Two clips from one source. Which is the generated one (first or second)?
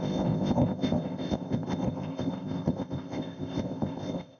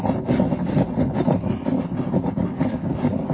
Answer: first